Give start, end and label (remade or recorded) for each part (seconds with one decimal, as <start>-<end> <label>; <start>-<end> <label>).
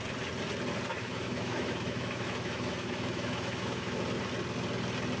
0.0-0.9 recorded; 0.9-4.0 remade; 4.0-5.2 recorded